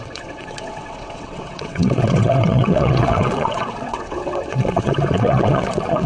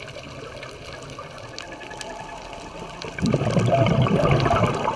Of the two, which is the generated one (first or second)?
first